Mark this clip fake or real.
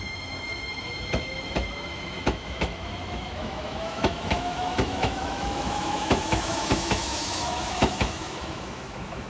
fake